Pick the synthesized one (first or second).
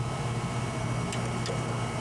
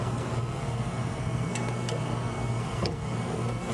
second